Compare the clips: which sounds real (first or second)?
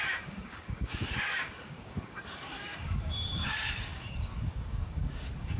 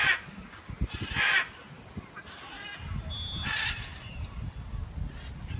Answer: second